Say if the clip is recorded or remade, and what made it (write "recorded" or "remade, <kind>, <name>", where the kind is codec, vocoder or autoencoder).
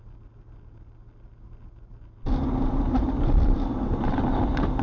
recorded